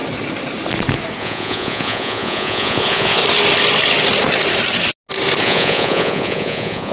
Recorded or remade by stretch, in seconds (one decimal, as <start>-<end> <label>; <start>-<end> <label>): 0.0-1.2 recorded; 1.2-3.2 remade; 3.2-5.4 recorded; 5.4-6.9 remade